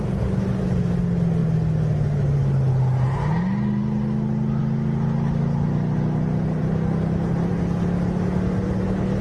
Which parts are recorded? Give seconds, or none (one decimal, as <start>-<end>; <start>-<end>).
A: 0.0-9.2